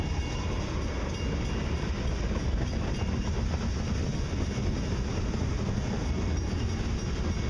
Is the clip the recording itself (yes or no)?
yes